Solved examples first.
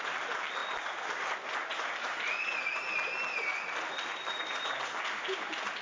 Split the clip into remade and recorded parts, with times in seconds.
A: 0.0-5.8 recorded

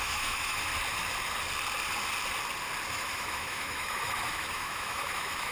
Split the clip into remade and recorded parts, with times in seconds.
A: 0.0-0.7 remade; 0.7-2.9 recorded; 2.9-5.5 remade

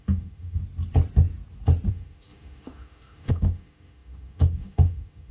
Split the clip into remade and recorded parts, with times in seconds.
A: 0.0-0.6 remade; 0.6-1.9 recorded; 1.9-5.3 remade

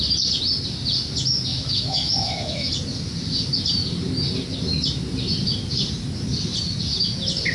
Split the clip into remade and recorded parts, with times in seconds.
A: 0.0-1.5 recorded; 1.5-2.7 remade; 2.7-7.5 recorded